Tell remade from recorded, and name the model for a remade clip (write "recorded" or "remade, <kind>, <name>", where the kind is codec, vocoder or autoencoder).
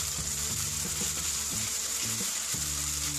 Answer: remade, vocoder, BigVGAN v2